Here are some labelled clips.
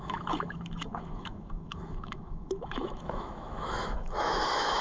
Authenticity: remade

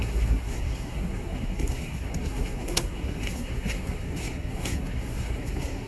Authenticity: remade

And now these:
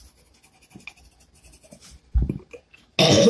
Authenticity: recorded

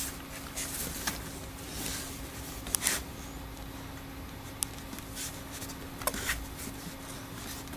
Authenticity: recorded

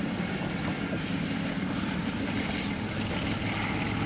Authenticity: recorded